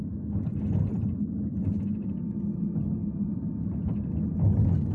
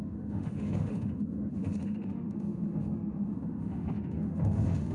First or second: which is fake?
second